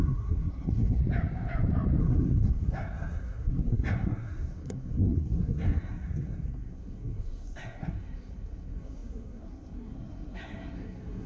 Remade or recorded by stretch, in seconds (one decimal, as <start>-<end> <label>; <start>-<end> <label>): 0.0-1.0 remade; 1.0-2.0 recorded; 2.0-11.3 remade